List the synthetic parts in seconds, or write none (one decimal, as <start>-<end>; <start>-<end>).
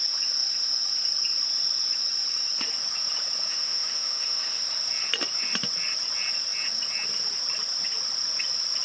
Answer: 3.5-4.6